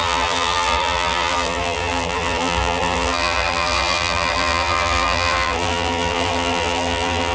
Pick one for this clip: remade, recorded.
remade